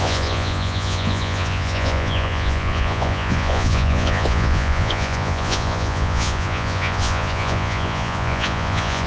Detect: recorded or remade remade